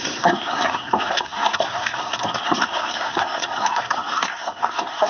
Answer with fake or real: fake